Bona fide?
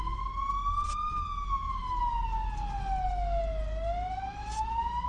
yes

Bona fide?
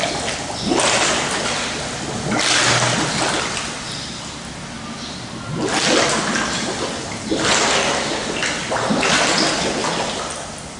yes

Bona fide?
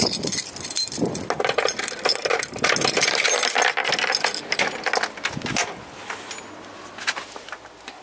yes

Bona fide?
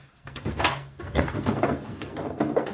no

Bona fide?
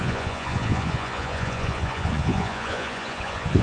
no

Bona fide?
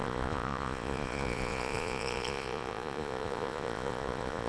no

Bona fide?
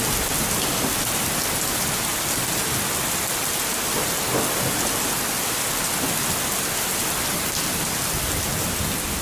yes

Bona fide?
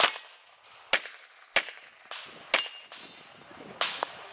yes